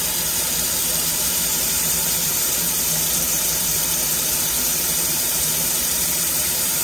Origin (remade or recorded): remade